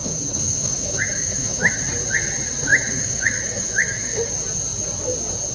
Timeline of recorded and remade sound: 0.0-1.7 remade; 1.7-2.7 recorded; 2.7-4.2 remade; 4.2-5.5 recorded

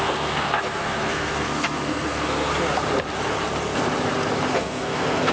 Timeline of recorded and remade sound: 0.0-2.5 remade; 2.5-4.5 recorded; 4.5-5.3 remade

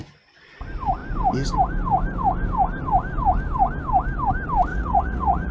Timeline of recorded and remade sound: 0.0-4.7 recorded; 4.7-5.5 remade